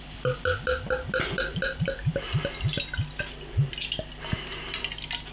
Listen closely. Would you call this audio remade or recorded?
recorded